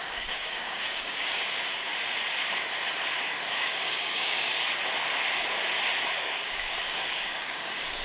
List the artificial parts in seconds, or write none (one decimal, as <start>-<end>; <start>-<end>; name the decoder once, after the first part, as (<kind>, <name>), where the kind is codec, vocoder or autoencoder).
0.0-1.9 (codec, DAC); 3.2-4.5; 6.2-8.0